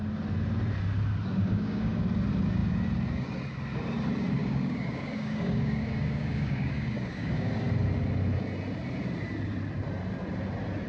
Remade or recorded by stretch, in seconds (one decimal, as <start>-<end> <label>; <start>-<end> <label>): 0.0-1.4 recorded; 1.4-2.0 remade; 2.0-4.4 recorded; 4.4-7.5 remade; 7.5-10.9 recorded